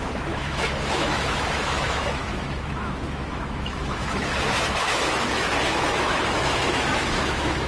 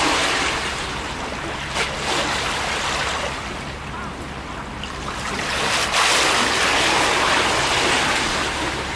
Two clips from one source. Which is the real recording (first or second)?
second